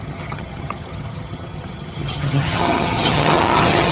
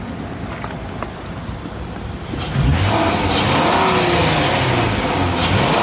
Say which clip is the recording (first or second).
second